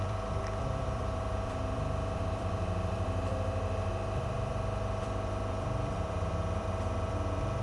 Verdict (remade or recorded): remade